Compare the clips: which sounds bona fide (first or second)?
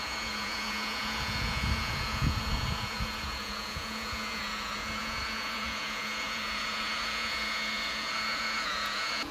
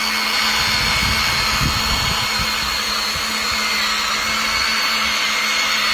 second